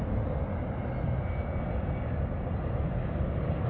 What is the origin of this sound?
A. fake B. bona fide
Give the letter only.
B